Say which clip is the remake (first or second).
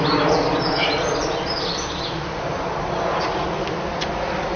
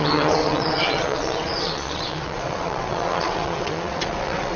second